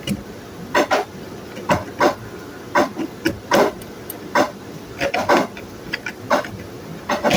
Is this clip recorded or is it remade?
recorded